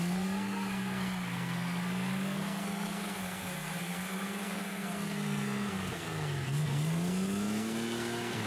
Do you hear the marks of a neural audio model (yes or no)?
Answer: yes